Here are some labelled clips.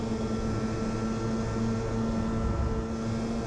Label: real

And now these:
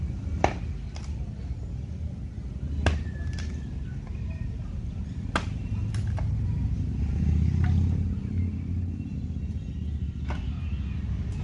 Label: real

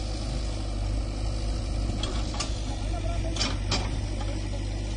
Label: real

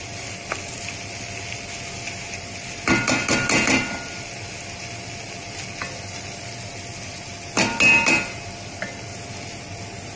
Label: real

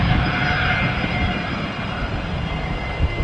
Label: real